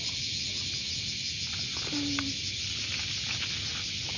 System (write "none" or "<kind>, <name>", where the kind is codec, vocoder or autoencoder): none